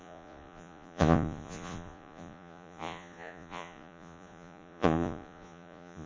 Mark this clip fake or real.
fake